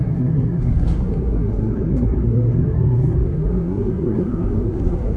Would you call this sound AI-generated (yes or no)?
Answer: yes